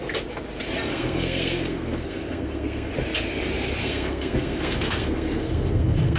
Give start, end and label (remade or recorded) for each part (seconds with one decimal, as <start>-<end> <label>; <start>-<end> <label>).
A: 0.0-0.9 recorded; 0.9-2.9 remade; 2.9-3.8 recorded; 3.8-6.2 remade